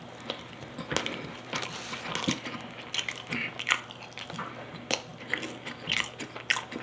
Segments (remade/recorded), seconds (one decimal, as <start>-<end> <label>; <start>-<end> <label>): 0.0-6.8 recorded